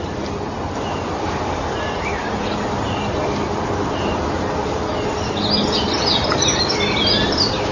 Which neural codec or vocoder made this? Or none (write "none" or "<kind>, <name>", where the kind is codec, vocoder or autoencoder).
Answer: none